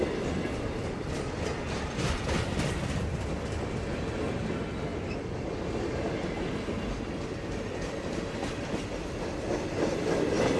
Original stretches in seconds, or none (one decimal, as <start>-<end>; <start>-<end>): 0.0-10.6